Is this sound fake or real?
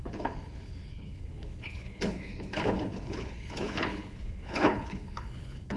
fake